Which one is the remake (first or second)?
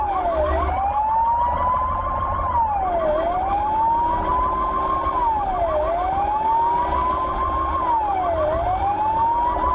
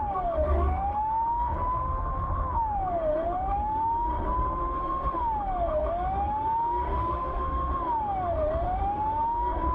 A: second